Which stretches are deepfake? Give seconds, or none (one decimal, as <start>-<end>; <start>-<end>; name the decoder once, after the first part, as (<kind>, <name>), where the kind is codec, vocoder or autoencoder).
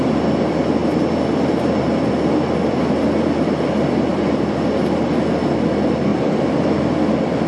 0.8-3.1 (vocoder, BigVGAN v2); 4.1-4.7; 6.1-7.5